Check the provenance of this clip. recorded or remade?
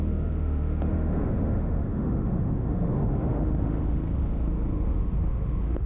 remade